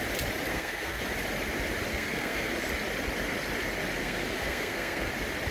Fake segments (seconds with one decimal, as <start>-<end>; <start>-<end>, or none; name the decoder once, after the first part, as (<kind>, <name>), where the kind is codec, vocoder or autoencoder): 0.5-1.0 (codec, SNAC); 1.9-2.5; 4.0-5.1